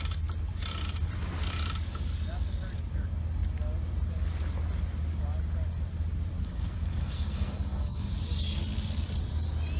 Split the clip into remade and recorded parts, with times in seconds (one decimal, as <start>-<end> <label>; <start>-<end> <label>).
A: 0.0-6.4 recorded; 6.4-8.1 remade; 8.1-9.8 recorded